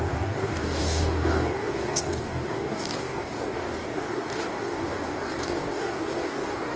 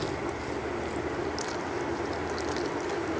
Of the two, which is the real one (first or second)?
second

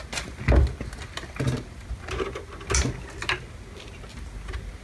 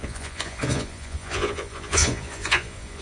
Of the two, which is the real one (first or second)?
first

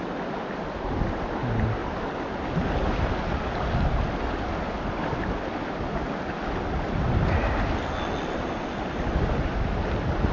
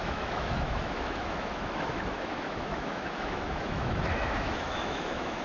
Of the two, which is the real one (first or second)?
first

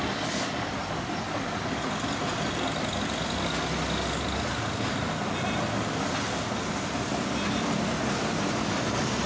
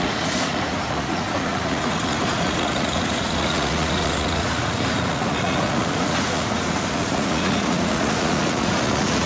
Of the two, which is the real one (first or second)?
first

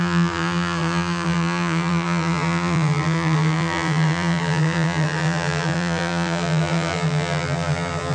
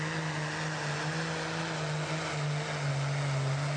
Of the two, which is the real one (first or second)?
second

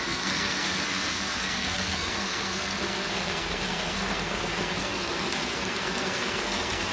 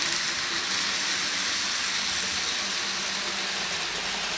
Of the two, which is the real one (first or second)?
second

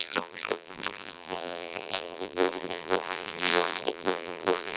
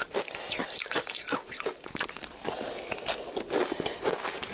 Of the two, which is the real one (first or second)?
second